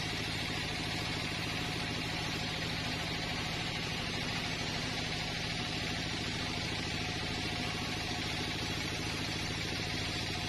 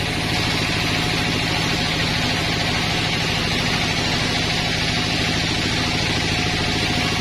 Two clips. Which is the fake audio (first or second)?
first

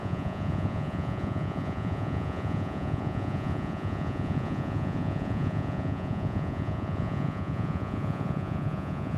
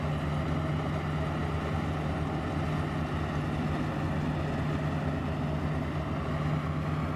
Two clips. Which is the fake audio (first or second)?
first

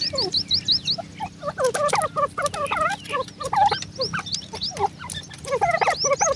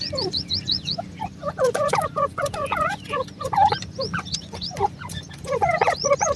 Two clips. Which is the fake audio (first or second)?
second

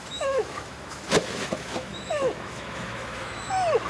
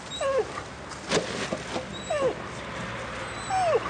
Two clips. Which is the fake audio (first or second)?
first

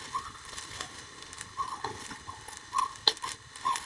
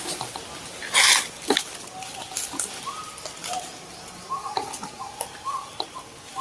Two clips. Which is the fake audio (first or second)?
first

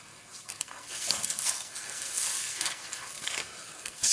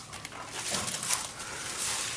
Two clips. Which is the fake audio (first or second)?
first